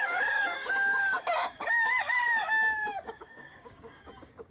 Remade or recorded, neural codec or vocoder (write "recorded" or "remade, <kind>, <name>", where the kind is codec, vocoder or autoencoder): remade, codec, DAC